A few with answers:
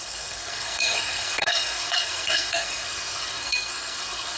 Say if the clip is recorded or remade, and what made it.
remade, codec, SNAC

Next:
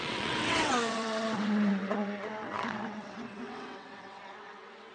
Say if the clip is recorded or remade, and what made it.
remade, vocoder, WaveNeXt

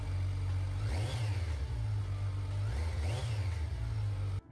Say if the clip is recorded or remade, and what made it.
recorded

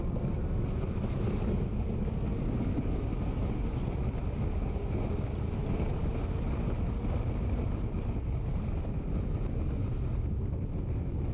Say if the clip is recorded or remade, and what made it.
recorded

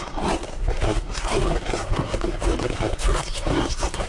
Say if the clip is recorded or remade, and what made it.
remade, codec, SNAC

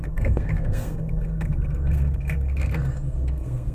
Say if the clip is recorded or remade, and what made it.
remade, codec, SNAC